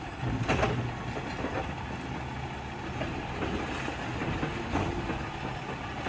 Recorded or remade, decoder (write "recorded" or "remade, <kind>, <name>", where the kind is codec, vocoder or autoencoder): recorded